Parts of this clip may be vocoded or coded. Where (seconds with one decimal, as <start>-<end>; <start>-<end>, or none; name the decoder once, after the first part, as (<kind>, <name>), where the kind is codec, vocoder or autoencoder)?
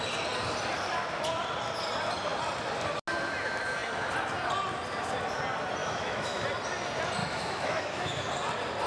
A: 5.8-6.4 (autoencoder, DAC-VAE); 7.2-8.3